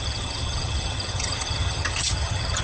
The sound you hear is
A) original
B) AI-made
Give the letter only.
B